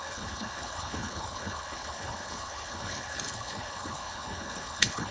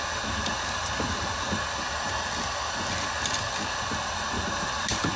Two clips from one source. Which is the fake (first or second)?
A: first